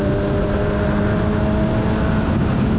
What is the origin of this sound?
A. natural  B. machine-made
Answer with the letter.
A